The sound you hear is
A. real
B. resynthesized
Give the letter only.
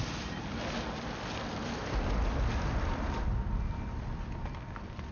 A